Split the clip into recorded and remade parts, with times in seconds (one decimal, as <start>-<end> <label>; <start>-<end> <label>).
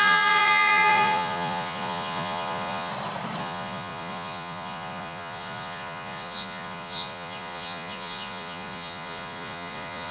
0.0-2.9 remade; 2.9-3.4 recorded; 3.4-10.1 remade